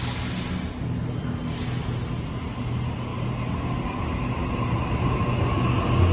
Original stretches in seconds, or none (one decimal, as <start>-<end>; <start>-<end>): 0.0-6.1

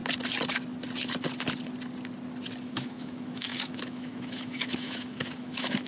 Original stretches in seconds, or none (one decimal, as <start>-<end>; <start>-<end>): 0.0-2.6

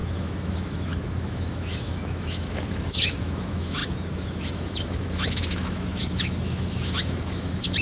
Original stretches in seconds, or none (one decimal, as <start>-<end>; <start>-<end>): none

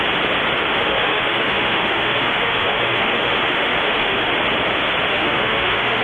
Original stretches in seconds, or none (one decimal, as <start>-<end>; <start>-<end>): 0.0-0.7; 4.3-5.1

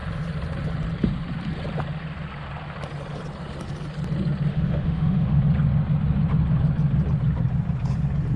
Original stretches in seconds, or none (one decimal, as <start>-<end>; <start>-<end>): 0.0-4.5; 5.4-8.4

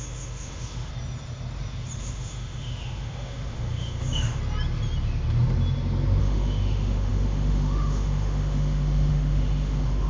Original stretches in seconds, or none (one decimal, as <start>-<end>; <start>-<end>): 0.9-2.0; 4.4-6.2

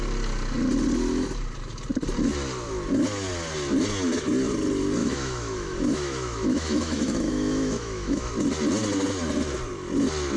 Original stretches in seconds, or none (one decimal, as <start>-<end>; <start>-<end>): 0.0-5.0; 8.3-10.4

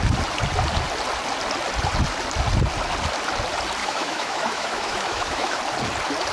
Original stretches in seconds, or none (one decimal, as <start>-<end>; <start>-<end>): 0.0-3.8; 5.6-6.3